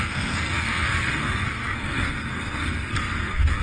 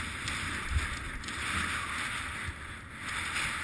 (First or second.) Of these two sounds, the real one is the second